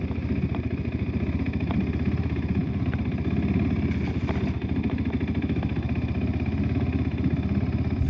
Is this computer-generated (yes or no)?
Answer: no